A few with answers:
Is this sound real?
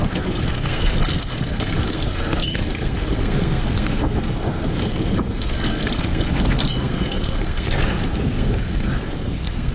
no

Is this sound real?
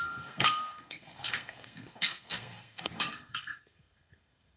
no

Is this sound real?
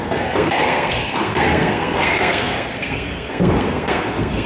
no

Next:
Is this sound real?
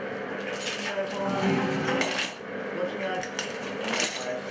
yes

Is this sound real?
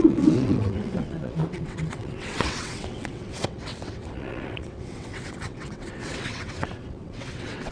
no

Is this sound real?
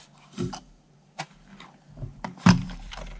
no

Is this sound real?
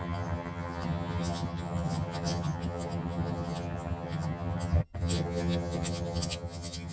no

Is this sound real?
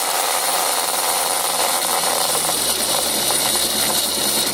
no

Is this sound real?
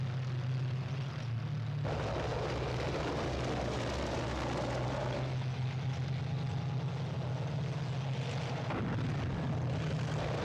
yes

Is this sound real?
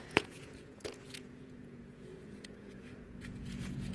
no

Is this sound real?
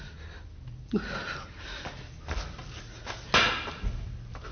yes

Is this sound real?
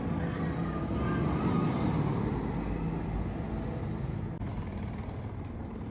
yes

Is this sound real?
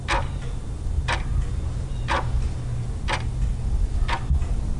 yes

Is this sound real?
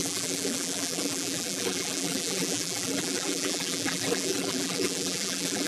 no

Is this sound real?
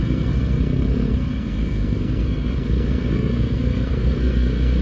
no